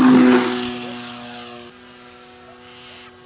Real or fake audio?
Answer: real